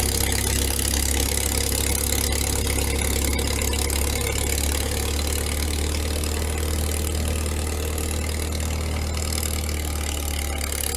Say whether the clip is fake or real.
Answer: real